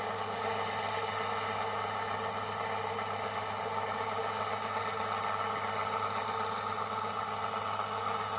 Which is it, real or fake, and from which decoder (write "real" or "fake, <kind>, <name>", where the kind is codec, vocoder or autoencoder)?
real